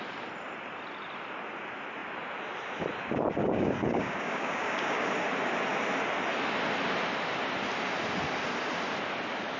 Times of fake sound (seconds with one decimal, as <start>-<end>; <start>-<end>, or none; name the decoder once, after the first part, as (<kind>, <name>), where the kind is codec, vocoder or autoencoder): 3.4-5.1 (codec, DAC)

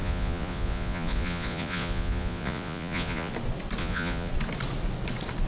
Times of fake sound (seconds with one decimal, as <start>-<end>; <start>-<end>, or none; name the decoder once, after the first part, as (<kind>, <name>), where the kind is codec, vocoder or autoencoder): 0.0-3.3 (vocoder, Vocos); 3.8-4.3

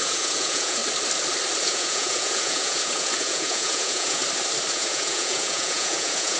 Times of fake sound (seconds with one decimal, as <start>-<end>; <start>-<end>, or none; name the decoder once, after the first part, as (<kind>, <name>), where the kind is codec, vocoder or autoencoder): 0.0-0.8 (vocoder, Vocos); 1.6-4.2; 4.7-6.4

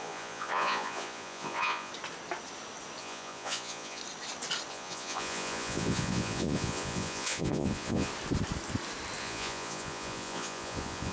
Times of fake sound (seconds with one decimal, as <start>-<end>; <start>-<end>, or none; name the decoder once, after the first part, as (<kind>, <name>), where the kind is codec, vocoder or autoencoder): 0.0-1.9 (vocoder, Vocos); 3.0-4.0; 4.7-8.1; 9.2-11.1

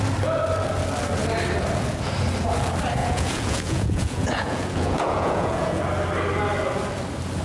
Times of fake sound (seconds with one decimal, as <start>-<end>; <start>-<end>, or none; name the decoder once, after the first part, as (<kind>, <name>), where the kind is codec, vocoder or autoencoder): 3.0-5.8 (vocoder, Vocos)

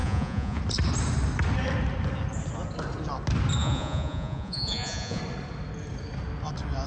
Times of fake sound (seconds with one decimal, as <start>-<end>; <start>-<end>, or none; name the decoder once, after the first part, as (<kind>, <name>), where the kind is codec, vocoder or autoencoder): 0.0-0.6 (vocoder, Vocos); 3.6-5.2

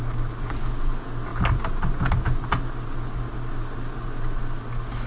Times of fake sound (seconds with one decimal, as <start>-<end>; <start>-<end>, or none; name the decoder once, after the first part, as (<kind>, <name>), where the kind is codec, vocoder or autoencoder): none

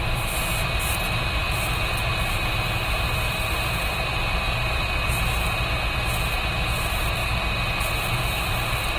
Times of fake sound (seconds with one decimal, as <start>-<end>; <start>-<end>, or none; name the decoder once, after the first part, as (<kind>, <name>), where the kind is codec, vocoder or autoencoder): 0.0-7.2 (vocoder, BigVGAN v2); 8.1-9.0